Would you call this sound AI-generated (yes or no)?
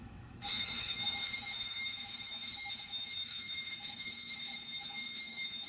yes